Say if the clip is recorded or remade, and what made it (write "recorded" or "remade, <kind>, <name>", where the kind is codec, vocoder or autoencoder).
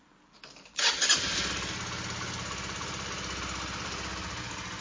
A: recorded